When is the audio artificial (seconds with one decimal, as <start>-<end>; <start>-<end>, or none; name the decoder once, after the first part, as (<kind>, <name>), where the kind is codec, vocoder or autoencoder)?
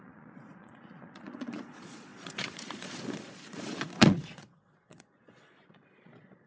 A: 0.0-6.5 (vocoder, Vocos)